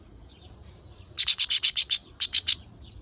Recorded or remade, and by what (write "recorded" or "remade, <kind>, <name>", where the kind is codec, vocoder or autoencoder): remade, vocoder, Vocos